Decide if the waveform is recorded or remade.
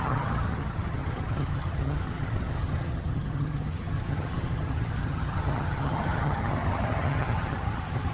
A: remade